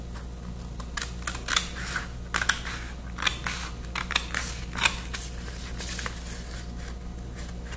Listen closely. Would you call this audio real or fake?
real